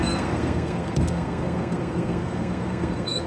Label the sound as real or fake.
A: fake